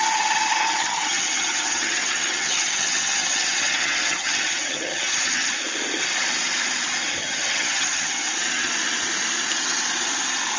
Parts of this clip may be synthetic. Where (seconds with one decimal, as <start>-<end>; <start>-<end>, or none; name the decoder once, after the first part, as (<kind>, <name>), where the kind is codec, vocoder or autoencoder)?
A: 0.6-5.5 (vocoder, HiFi-GAN); 7.2-8.7